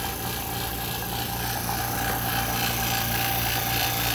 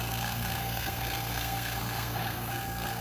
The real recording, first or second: first